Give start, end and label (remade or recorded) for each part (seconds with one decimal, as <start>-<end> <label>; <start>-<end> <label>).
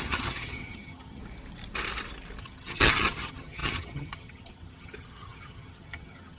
0.0-1.2 remade; 1.2-2.4 recorded; 2.4-6.4 remade